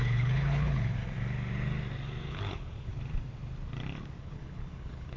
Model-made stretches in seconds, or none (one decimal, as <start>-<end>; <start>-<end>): 0.0-1.0; 2.3-2.9; 4.2-5.2